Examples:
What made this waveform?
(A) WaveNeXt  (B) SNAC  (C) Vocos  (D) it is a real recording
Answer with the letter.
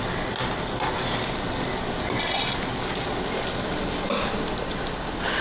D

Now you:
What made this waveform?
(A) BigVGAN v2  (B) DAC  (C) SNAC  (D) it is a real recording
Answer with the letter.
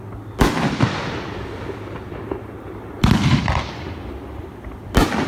D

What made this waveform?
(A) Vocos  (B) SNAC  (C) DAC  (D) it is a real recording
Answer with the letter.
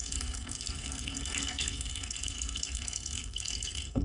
B